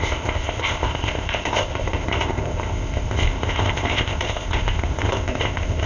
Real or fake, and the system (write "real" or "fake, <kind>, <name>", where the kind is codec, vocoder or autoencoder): fake, codec, ZipCodec